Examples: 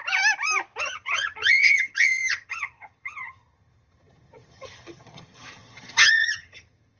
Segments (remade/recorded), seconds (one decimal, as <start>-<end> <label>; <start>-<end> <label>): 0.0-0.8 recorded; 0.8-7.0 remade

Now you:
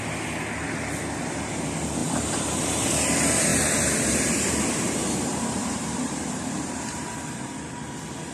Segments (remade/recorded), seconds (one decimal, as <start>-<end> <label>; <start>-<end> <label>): 0.0-2.0 recorded; 2.0-3.1 remade; 3.1-3.5 recorded; 3.5-7.2 remade; 7.2-8.3 recorded

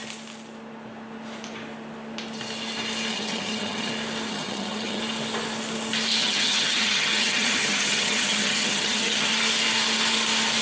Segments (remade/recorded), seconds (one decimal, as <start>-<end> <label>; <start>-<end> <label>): 0.0-3.1 recorded; 3.1-3.9 remade; 3.9-4.3 recorded; 4.3-5.0 remade; 5.0-6.2 recorded; 6.2-9.3 remade; 9.3-10.6 recorded

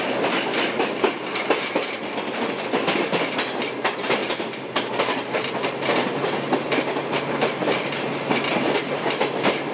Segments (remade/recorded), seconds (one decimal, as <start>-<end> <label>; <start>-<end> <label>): 0.0-4.2 recorded; 4.2-4.9 remade; 4.9-9.7 recorded

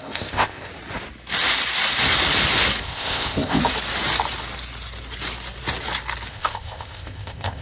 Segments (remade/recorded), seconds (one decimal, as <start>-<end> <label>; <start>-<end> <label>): 0.0-0.7 remade; 0.7-2.8 recorded; 2.8-3.6 remade; 3.6-6.3 recorded; 6.3-7.6 remade

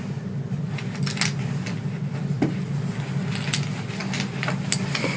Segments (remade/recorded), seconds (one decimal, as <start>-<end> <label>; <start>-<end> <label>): 0.0-5.2 recorded

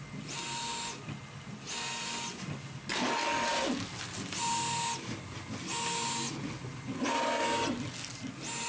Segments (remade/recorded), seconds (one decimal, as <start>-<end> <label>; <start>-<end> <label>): 0.0-8.7 recorded

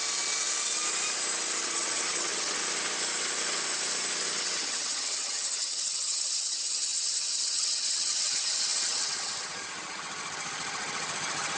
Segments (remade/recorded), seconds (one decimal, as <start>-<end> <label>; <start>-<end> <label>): 0.0-1.6 recorded; 1.6-2.6 remade; 2.6-4.3 recorded; 4.3-11.6 remade